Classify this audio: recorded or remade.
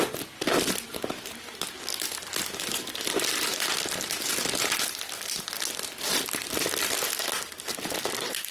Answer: recorded